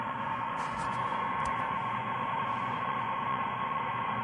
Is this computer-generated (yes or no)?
yes